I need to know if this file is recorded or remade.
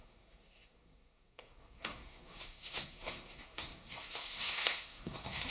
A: remade